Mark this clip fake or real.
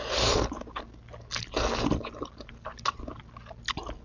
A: real